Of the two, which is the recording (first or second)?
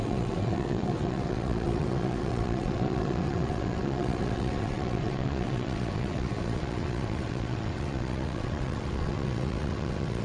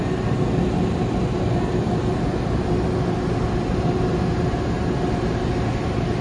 second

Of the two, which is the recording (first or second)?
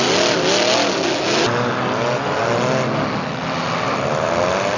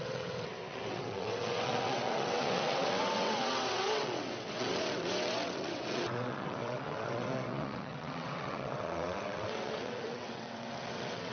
first